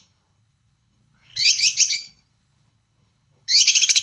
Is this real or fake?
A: fake